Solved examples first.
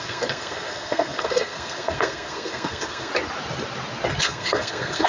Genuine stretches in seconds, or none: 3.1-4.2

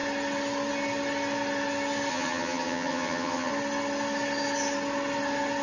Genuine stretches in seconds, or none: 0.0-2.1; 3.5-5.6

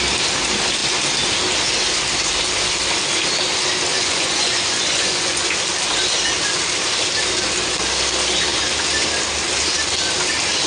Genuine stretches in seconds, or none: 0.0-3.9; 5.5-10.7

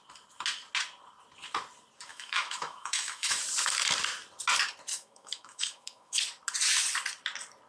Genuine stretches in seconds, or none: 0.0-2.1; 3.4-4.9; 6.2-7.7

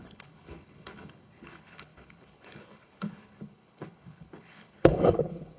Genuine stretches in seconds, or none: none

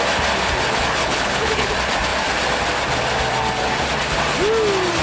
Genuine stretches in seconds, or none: 0.0-1.0; 1.7-5.0

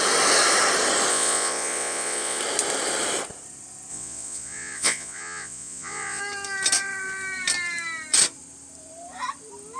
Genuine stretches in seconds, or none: 0.0-1.1; 2.4-3.9; 6.2-9.8

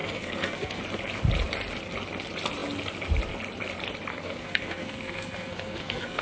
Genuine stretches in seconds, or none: 0.8-4.1